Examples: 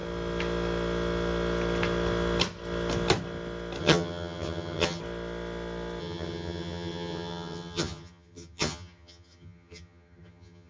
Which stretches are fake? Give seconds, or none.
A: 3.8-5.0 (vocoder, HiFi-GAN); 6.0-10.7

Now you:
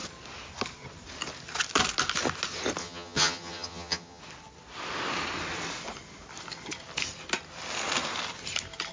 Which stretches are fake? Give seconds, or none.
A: 2.8-4.2 (vocoder, HiFi-GAN)

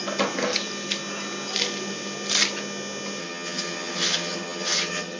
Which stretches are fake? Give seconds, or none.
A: 3.2-5.2 (vocoder, HiFi-GAN)

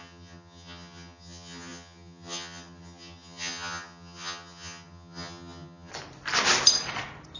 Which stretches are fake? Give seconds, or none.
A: 0.0-5.9 (vocoder, HiFi-GAN)

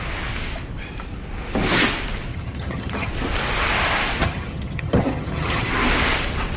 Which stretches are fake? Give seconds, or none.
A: 2.3-3.1 (vocoder, HiFi-GAN); 4.2-5.7

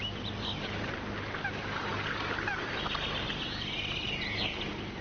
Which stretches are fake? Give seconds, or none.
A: none